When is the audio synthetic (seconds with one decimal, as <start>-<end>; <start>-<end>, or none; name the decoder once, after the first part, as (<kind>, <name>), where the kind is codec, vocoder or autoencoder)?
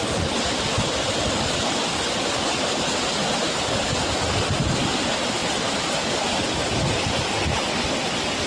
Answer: none